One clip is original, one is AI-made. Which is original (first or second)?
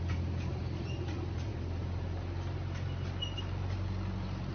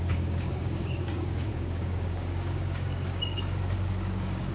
first